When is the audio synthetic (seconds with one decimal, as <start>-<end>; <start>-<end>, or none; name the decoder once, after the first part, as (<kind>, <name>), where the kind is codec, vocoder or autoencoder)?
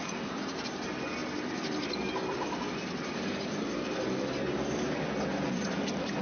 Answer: none